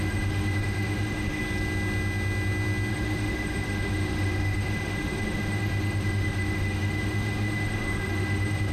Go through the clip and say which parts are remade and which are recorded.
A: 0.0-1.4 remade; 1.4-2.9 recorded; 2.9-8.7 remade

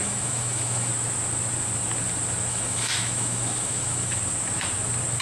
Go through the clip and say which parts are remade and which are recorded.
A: 0.0-0.9 remade; 0.9-2.5 recorded; 2.5-4.2 remade; 4.2-5.2 recorded

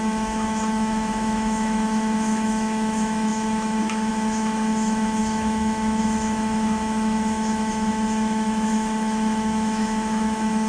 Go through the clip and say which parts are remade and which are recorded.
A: 0.0-10.7 remade